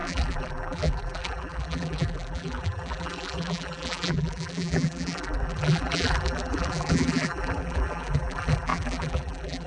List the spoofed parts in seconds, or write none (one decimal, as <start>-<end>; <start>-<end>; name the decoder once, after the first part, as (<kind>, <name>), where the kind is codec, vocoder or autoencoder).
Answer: 0.0-9.7 (vocoder, BigVGAN v2)